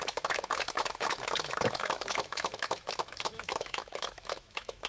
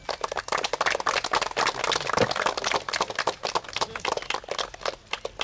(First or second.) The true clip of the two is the second